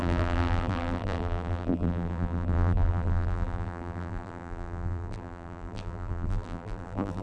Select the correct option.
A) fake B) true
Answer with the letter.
A